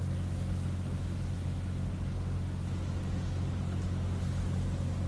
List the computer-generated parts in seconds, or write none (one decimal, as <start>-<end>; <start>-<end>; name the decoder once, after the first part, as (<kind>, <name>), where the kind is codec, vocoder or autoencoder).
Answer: none